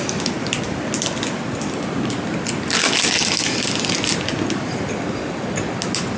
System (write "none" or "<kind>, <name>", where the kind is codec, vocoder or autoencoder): none